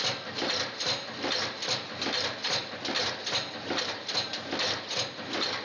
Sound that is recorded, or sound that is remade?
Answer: recorded